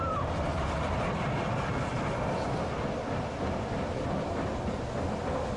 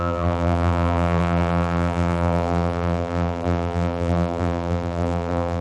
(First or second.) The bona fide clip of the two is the first